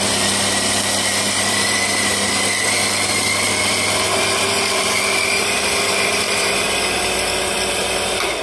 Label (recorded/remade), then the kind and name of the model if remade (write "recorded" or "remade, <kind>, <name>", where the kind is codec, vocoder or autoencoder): recorded